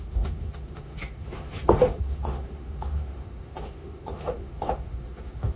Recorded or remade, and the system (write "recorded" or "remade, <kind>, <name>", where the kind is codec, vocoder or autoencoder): remade, autoencoder, DAC-VAE